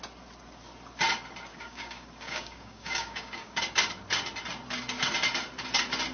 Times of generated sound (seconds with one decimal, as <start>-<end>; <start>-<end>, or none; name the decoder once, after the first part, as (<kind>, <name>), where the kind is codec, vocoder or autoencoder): 1.5-3.6 (codec, DAC)